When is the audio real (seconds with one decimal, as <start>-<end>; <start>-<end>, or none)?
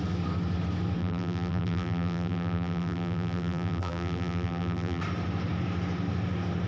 0.0-1.0; 5.0-6.7